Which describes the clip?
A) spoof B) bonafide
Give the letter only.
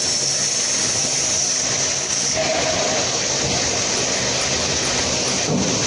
B